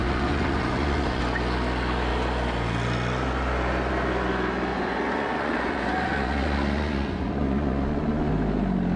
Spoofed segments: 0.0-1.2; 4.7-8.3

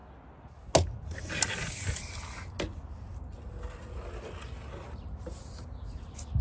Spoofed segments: none

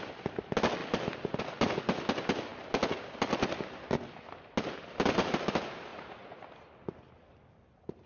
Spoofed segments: 5.9-6.4

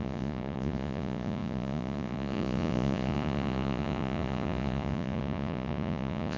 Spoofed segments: 0.0-6.4

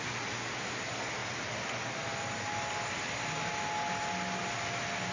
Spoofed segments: none

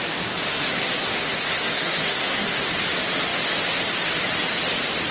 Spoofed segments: 0.5-2.7

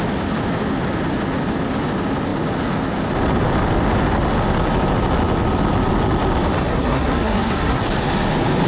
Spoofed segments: 6.7-7.8

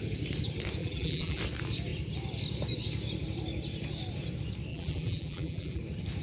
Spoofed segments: 0.8-1.4; 4.7-5.8